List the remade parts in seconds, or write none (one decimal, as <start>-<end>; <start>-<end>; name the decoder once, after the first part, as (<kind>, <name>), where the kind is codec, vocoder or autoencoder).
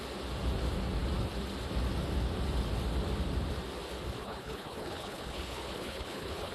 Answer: 4.2-6.5 (codec, HILCodec)